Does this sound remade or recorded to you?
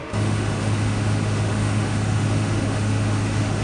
remade